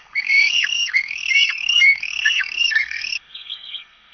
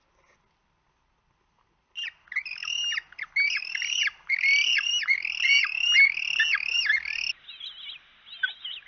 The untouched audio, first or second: second